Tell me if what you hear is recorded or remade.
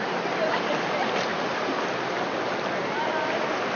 recorded